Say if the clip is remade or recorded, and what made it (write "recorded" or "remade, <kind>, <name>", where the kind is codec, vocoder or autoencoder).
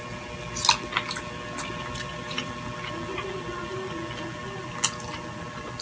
recorded